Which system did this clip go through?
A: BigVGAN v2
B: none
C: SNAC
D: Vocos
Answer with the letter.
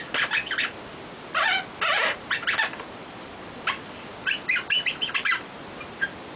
B